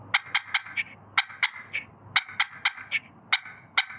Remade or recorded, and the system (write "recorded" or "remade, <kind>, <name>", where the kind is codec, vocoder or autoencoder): recorded